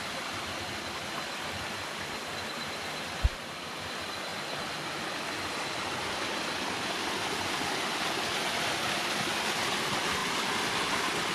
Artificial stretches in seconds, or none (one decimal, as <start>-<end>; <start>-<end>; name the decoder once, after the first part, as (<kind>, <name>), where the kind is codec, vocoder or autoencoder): none